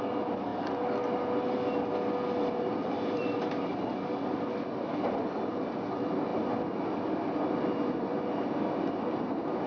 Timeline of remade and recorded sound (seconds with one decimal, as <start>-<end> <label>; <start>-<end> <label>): 0.0-2.7 recorded; 2.7-3.7 remade; 3.7-9.7 recorded